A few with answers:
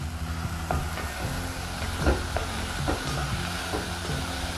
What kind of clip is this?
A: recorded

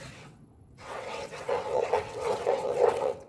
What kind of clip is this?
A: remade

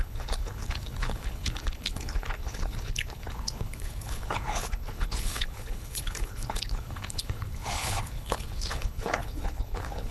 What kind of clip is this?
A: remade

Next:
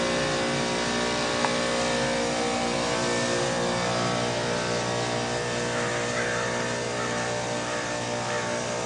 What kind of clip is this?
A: recorded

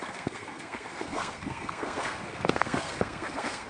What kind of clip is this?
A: remade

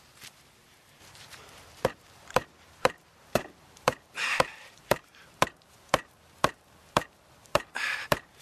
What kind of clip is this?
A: remade